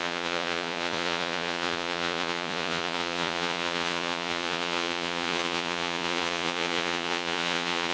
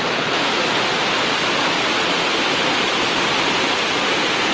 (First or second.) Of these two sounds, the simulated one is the first